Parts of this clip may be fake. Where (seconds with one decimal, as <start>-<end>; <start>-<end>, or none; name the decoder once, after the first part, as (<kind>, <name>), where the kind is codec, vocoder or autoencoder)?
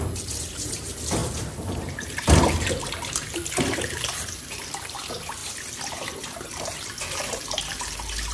0.0-3.4 (vocoder, BigVGAN v2); 3.9-5.4; 5.9-8.3